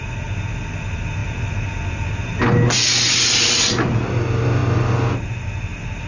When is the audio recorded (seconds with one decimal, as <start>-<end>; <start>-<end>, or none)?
0.0-6.1